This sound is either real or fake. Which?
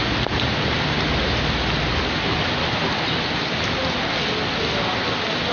real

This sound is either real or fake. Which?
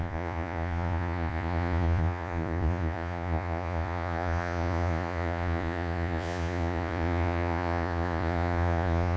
fake